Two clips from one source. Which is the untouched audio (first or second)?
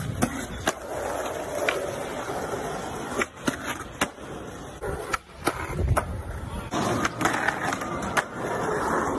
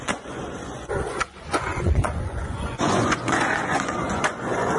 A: first